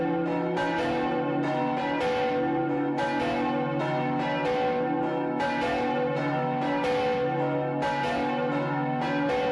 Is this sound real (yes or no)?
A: yes